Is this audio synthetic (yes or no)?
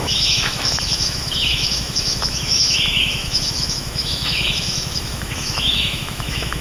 yes